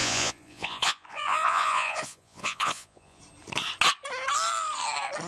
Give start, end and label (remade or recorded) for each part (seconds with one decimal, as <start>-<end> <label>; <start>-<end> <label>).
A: 0.0-3.2 remade; 3.2-5.3 recorded

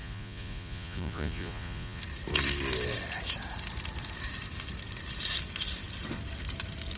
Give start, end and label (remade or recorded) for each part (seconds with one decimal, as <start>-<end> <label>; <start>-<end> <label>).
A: 0.0-2.0 remade; 2.0-7.0 recorded